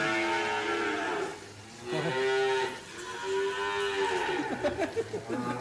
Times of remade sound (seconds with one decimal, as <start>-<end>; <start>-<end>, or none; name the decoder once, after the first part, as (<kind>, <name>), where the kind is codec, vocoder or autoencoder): none